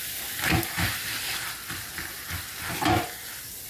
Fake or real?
real